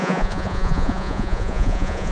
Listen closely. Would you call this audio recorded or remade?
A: remade